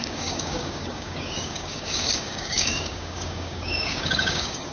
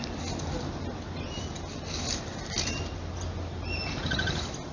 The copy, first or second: first